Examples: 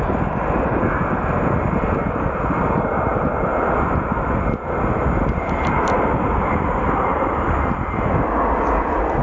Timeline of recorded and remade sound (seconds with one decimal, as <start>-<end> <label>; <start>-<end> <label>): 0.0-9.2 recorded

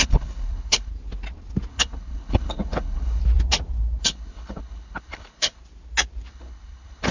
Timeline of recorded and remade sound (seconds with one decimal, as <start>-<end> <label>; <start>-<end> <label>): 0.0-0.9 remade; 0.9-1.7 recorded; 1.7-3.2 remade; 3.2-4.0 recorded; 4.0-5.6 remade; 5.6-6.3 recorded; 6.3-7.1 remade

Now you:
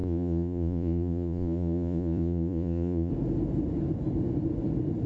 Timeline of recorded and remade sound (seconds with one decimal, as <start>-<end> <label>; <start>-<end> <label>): 0.0-3.1 remade; 3.1-5.1 recorded

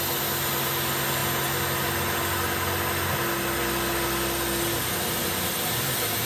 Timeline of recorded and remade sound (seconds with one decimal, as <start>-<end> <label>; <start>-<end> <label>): 0.0-6.3 recorded

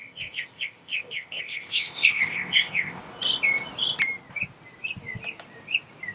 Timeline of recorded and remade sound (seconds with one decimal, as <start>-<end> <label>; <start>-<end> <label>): 0.0-3.0 remade; 3.0-6.1 recorded

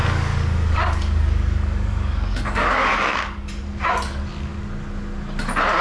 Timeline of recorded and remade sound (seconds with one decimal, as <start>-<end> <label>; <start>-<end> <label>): 0.0-3.5 remade; 3.5-5.8 recorded

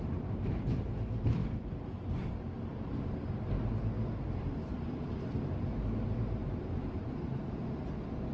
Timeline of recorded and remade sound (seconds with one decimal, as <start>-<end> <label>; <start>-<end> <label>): 0.0-1.4 remade; 1.4-4.4 recorded; 4.4-8.3 remade